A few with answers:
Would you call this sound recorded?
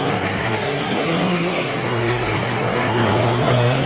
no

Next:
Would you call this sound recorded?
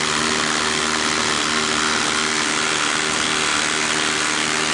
yes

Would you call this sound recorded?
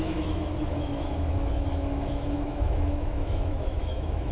no